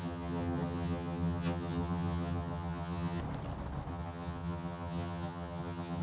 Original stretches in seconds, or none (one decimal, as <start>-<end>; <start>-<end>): 3.2-3.9